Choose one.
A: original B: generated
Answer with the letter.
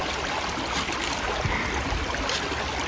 A